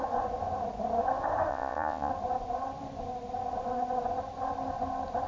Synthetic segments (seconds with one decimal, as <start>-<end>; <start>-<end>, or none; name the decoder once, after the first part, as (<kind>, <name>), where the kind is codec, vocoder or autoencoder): 1.5-2.1 (vocoder, Vocos)